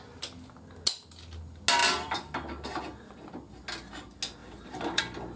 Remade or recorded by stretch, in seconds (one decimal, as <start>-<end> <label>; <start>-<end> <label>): 0.0-1.8 recorded; 1.8-2.8 remade; 2.8-4.4 recorded; 4.4-5.0 remade; 5.0-5.4 recorded